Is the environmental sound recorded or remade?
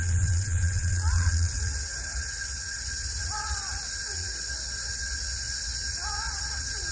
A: remade